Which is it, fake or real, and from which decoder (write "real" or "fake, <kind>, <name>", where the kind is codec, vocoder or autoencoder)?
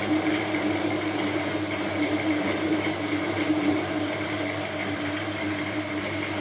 fake, vocoder, BigVGAN v2